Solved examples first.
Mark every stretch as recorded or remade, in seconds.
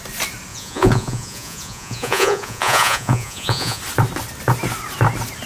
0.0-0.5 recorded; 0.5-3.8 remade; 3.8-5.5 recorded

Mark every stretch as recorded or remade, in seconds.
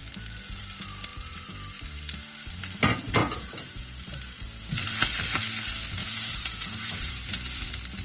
0.0-3.2 recorded; 3.2-4.6 remade; 4.6-6.0 recorded; 6.0-7.6 remade; 7.6-8.0 recorded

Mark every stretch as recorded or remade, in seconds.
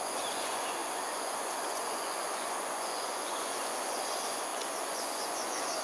0.0-5.8 remade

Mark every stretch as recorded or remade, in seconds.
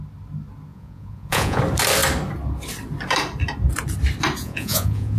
0.0-0.7 recorded; 0.7-1.6 remade; 1.6-4.4 recorded; 4.4-5.2 remade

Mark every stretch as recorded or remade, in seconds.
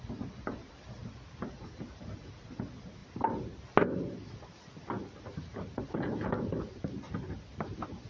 0.0-8.1 recorded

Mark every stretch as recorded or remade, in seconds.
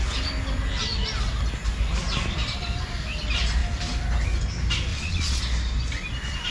0.0-4.9 recorded; 4.9-5.4 remade; 5.4-6.5 recorded